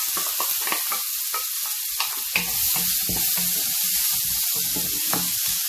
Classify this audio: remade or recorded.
recorded